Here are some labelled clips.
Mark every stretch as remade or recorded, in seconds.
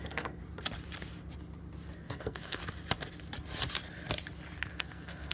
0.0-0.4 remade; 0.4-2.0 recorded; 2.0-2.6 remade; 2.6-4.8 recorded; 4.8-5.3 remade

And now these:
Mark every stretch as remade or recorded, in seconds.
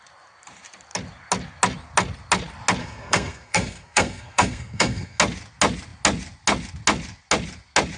0.0-2.8 recorded; 2.8-5.2 remade; 5.2-8.0 recorded